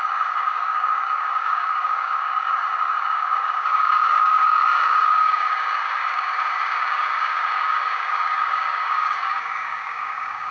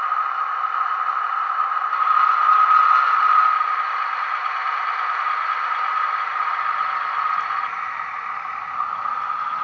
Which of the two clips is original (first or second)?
second